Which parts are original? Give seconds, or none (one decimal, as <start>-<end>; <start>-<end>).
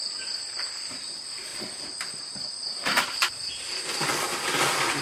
0.0-5.0